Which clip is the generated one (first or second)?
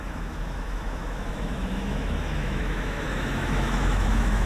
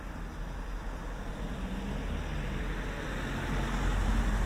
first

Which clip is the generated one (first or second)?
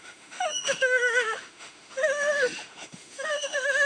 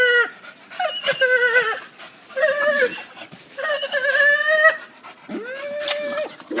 first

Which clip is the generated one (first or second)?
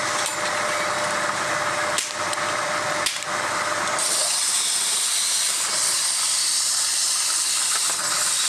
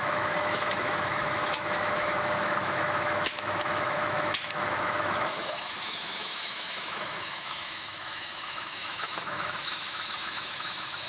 second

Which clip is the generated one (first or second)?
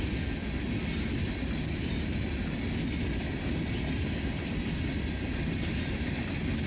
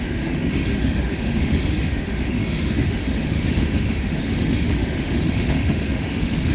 second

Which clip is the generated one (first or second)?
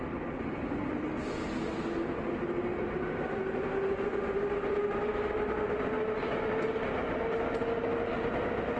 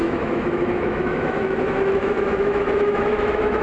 second